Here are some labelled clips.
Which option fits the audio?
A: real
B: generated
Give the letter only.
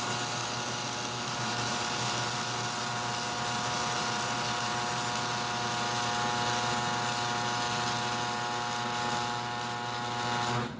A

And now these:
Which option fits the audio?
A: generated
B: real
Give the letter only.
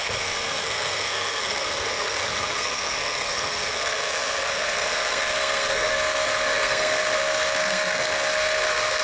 A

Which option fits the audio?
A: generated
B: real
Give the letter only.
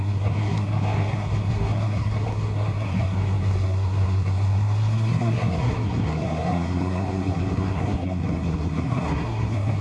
A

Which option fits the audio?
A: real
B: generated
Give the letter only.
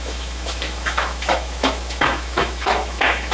B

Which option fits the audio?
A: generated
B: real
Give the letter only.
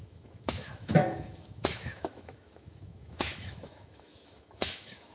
A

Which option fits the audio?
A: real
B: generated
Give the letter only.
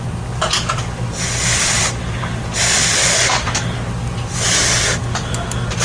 A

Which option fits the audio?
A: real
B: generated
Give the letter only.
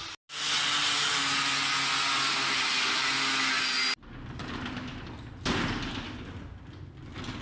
A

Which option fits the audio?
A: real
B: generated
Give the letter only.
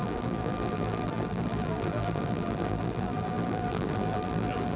B